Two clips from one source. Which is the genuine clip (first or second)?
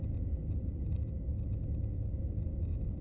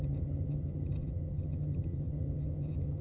first